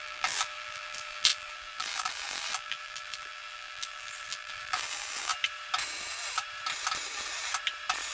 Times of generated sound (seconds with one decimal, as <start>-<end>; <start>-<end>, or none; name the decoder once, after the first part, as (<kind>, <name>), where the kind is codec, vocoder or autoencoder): 0.0-5.3 (vocoder, BigVGAN v2)